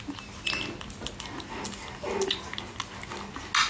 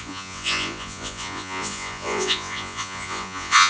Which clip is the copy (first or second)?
second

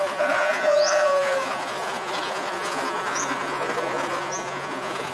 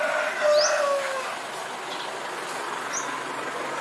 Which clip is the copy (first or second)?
first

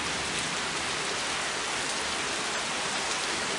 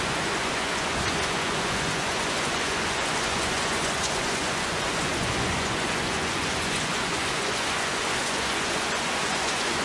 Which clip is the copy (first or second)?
second